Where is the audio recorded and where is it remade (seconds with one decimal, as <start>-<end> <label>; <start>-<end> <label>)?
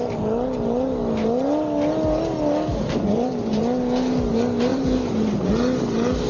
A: 0.0-2.7 recorded; 2.7-3.3 remade; 3.3-4.7 recorded; 4.7-5.5 remade; 5.5-6.3 recorded